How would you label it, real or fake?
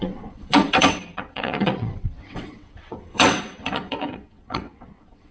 fake